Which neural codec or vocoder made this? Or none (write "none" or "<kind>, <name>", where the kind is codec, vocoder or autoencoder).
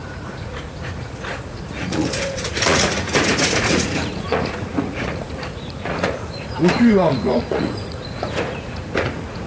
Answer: vocoder, Vocos